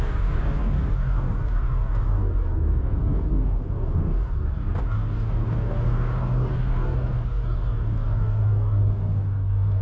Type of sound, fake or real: fake